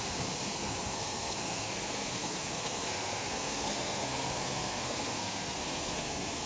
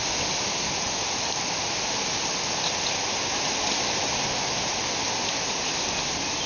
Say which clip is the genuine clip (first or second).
second